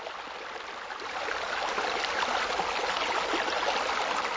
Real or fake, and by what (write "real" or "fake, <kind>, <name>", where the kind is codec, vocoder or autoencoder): real